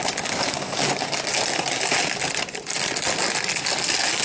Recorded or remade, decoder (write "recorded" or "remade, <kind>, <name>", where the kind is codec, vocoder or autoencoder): recorded